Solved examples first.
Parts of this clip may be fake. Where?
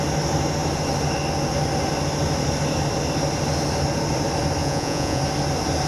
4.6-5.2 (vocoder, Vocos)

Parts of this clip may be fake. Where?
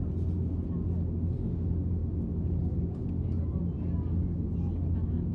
none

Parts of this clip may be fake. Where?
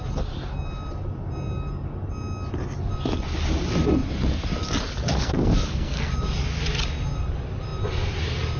5.1-6.1 (codec, SNAC)